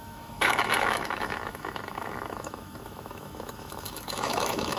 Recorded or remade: remade